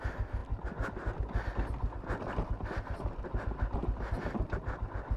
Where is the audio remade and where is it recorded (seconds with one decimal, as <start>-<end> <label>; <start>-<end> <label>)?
0.0-5.2 recorded